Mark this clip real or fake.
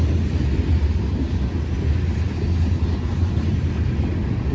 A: real